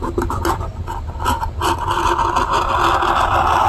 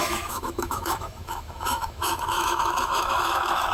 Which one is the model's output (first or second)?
second